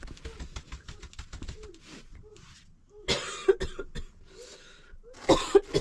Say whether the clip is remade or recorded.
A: recorded